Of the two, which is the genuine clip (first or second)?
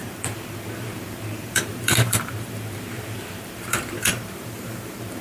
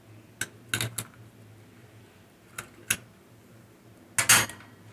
second